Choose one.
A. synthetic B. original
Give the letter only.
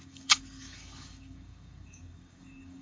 A